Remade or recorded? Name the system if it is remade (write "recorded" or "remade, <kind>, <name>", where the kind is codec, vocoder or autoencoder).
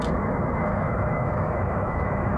remade, autoencoder, DAC-VAE